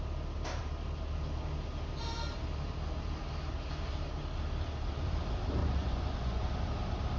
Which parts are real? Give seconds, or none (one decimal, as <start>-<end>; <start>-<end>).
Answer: 0.0-5.6; 6.5-7.2